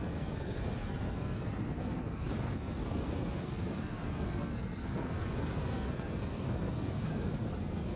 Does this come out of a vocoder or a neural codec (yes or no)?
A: yes